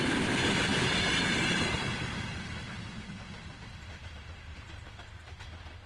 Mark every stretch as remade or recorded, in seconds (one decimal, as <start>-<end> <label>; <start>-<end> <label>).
0.0-0.7 recorded; 0.7-3.5 remade; 3.5-4.0 recorded; 4.0-4.7 remade; 4.7-5.9 recorded